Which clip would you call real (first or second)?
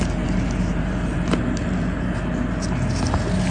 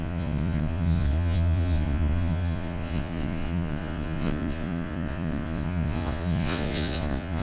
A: first